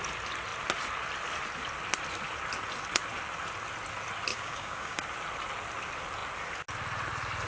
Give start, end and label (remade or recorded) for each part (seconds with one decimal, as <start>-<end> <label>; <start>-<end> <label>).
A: 0.0-4.3 recorded; 4.3-5.0 remade; 5.0-7.5 recorded